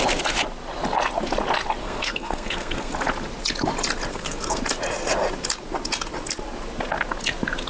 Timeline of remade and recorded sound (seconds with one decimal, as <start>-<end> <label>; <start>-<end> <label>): 0.0-1.8 recorded; 1.8-2.9 remade; 2.9-4.1 recorded; 4.1-4.6 remade; 4.6-7.7 recorded